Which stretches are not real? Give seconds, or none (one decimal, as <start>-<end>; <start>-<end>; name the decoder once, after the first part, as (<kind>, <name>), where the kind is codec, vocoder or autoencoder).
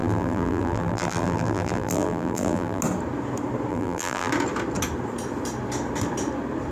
0.0-2.8 (vocoder, BigVGAN v2); 3.7-4.3